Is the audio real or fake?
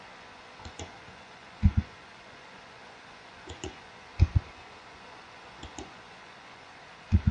fake